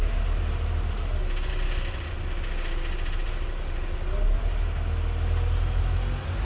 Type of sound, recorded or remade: recorded